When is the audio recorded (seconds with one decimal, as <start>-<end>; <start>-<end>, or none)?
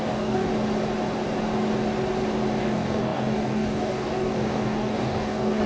0.5-2.6